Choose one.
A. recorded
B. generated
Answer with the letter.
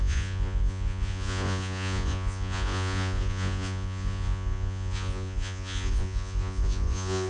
B